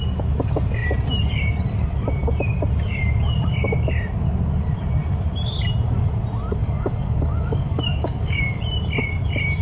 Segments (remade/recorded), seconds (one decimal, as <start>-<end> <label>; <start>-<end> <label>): 0.0-6.6 recorded; 6.6-8.6 remade; 8.6-9.6 recorded